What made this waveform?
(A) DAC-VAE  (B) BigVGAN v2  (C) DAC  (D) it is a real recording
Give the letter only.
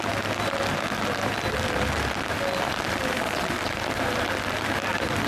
D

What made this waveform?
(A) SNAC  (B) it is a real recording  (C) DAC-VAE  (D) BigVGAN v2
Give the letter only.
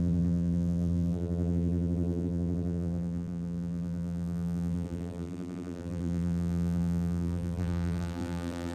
D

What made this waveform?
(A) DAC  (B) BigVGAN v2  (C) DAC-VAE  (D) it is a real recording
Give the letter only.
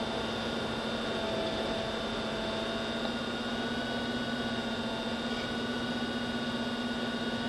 D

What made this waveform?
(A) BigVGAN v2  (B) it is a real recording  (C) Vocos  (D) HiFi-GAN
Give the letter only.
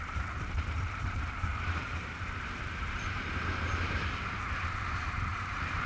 A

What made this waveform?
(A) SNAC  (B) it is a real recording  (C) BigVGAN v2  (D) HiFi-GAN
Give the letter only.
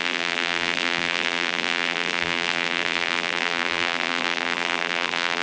C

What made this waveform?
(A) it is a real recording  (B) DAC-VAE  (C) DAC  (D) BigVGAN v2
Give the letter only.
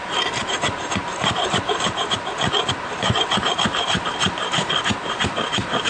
D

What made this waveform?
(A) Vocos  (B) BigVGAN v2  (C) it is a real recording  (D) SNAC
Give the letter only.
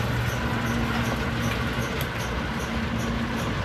C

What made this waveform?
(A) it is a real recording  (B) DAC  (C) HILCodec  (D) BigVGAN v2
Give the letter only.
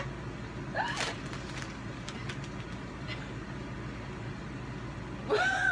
A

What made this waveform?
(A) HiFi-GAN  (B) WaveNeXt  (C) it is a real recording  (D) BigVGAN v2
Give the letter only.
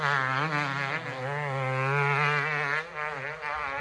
C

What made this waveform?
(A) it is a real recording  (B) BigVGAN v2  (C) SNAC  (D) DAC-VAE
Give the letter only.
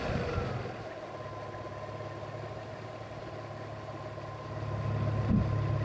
A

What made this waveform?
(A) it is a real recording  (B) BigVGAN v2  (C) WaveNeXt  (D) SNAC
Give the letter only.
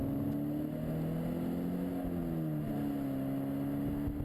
A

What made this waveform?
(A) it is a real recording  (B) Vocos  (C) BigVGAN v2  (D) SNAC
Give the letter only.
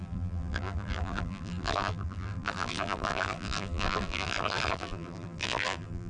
C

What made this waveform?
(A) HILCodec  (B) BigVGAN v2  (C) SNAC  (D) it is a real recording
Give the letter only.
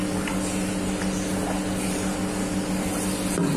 D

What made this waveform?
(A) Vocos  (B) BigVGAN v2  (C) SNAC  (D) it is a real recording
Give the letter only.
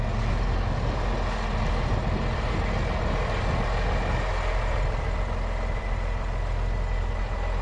D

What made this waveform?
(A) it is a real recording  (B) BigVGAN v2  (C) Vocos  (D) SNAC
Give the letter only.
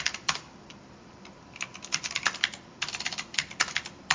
B